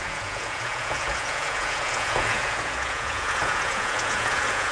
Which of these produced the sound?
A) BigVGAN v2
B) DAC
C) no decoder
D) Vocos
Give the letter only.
D